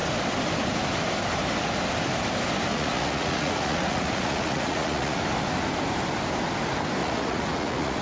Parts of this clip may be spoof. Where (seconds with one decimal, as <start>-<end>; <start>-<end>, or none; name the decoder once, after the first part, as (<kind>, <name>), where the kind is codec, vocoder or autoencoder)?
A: 2.7-5.2 (vocoder, Vocos); 7.0-8.0